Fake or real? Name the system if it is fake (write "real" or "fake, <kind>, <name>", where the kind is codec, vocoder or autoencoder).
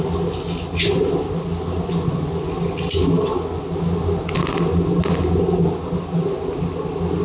real